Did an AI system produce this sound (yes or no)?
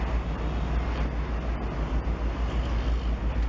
no